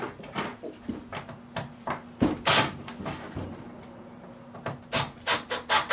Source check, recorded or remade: recorded